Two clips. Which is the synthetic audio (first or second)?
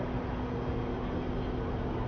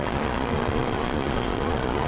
second